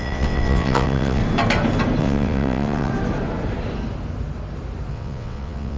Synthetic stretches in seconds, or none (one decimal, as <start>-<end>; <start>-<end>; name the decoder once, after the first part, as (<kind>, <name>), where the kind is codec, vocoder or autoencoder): 0.0-1.2 (vocoder, WaveNeXt); 2.0-2.9; 4.9-5.8